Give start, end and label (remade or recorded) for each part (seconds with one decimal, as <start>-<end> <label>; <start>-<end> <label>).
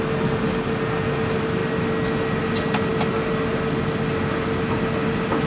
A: 0.0-5.5 recorded